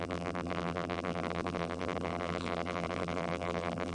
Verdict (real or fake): fake